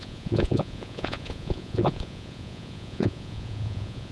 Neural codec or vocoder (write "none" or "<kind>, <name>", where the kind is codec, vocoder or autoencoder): vocoder, Vocos